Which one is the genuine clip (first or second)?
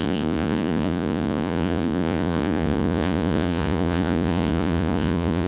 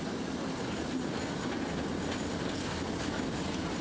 second